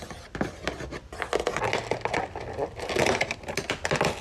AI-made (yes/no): no